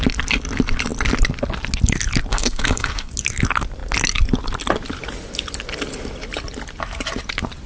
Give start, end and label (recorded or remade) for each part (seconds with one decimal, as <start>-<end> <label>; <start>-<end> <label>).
0.0-2.3 recorded; 2.3-3.1 remade; 3.1-7.7 recorded

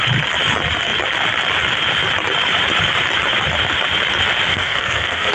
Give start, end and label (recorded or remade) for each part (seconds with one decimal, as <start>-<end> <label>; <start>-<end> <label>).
0.0-4.5 recorded; 4.5-5.3 remade

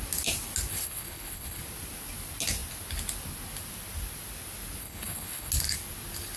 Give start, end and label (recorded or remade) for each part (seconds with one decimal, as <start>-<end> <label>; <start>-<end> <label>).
0.0-0.7 recorded; 0.7-1.6 remade; 1.6-4.8 recorded; 4.8-5.5 remade; 5.5-6.4 recorded